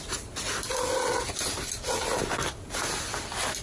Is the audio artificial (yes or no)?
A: no